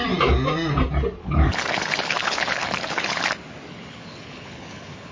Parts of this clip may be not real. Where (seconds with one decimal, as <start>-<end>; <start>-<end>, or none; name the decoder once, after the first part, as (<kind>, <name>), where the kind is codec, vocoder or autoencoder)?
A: 1.2-3.3 (codec, HILCodec); 3.7-5.1

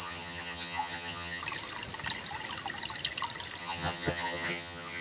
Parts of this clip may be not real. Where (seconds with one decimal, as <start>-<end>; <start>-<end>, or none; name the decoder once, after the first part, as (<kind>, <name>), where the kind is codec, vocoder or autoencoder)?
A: 0.0-1.4 (vocoder, HiFi-GAN); 3.6-5.0

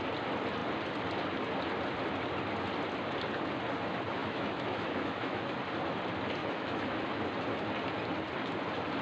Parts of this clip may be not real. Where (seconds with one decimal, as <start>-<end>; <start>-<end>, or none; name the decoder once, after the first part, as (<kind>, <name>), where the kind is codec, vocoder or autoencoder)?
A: 4.2-5.6 (autoencoder, DAC-VAE); 6.4-7.2